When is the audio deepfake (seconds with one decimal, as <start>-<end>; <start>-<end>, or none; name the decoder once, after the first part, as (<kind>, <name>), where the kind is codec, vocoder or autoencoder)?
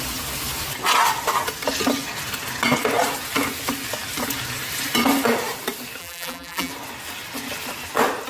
6.0-6.7 (vocoder, BigVGAN v2)